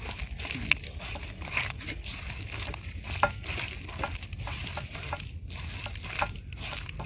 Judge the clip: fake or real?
real